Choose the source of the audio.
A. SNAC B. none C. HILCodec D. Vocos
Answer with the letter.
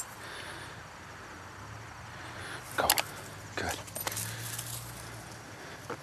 B